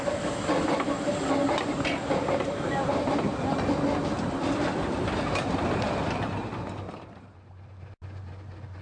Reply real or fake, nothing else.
real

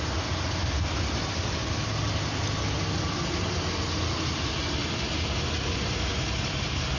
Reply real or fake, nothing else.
real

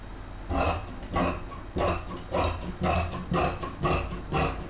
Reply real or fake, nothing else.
real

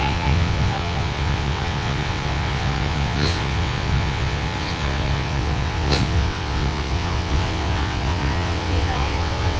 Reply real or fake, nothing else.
fake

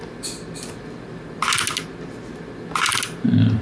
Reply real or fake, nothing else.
real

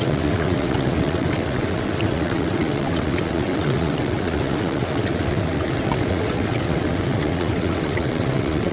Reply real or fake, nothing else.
fake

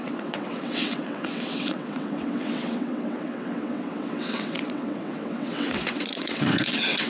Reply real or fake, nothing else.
fake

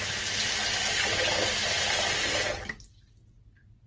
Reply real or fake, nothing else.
real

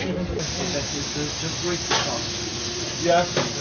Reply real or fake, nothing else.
real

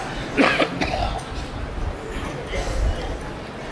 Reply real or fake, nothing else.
real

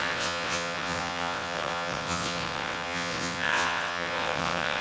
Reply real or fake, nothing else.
fake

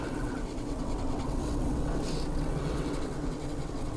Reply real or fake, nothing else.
fake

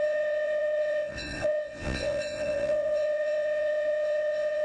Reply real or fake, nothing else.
fake